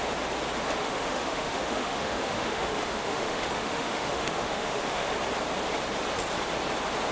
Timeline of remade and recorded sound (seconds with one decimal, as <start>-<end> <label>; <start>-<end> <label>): 0.0-0.8 recorded; 0.8-5.1 remade; 5.1-7.1 recorded